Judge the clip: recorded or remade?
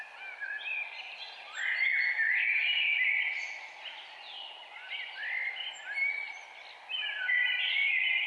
recorded